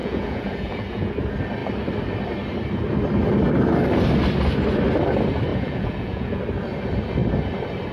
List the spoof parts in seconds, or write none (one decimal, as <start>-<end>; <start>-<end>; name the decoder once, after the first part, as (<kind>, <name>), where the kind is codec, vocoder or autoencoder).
0.0-1.1 (vocoder, Vocos); 5.5-6.4